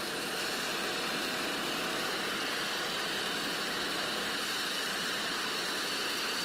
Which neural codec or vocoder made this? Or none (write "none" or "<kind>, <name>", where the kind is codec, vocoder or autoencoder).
none